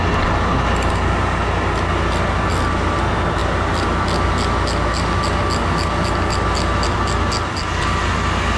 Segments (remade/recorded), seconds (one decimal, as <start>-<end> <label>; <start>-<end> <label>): 0.0-8.6 recorded